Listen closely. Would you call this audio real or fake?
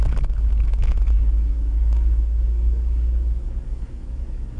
fake